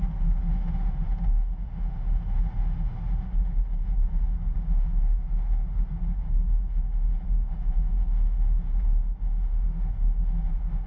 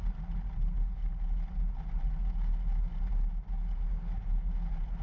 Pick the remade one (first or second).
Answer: first